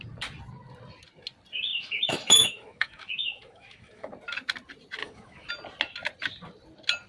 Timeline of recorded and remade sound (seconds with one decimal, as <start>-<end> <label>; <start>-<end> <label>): 0.0-1.7 recorded; 1.7-4.1 remade; 4.1-5.0 recorded; 5.0-5.5 remade; 5.5-7.1 recorded